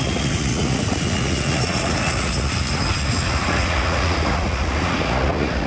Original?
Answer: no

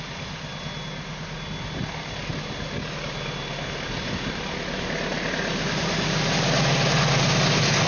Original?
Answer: yes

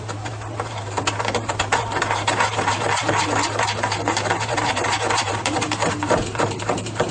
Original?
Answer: no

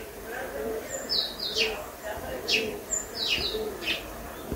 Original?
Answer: yes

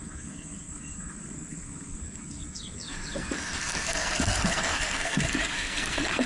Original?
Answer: no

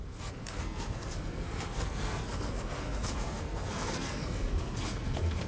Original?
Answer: no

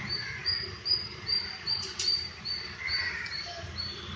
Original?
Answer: no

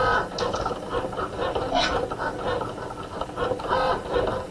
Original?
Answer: yes